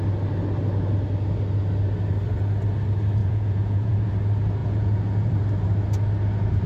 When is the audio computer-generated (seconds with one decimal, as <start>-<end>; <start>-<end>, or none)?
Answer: 3.2-4.1; 4.6-5.3